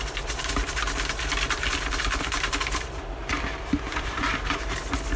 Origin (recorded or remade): recorded